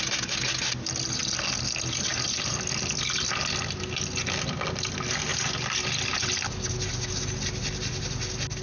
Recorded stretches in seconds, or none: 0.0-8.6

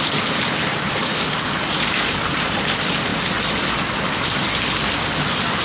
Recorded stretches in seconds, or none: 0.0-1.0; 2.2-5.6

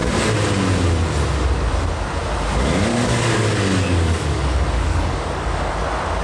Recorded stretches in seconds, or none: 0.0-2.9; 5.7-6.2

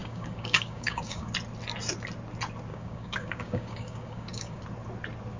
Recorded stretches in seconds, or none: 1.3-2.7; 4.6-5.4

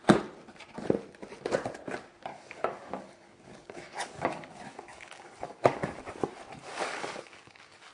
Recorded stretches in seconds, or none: 0.0-2.3; 6.0-6.6